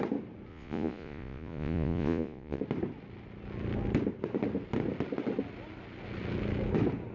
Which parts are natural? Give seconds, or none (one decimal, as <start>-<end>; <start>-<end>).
0.0-0.5; 2.6-7.1

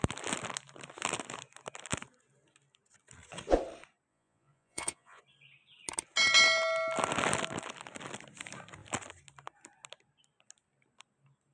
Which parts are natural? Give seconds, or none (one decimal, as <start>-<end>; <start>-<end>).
0.0-4.1; 5.2-11.5